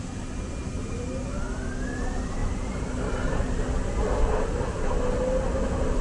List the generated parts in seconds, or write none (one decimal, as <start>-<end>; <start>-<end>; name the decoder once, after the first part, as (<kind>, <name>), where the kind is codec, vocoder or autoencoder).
none